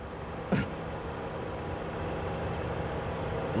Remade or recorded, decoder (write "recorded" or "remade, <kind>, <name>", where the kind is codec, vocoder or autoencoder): recorded